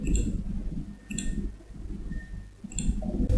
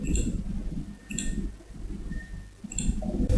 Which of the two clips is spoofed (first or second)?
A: second